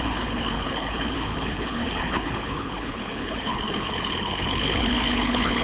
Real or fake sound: fake